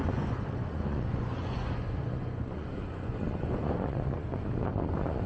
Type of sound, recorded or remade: remade